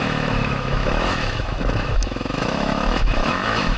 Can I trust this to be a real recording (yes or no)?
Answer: no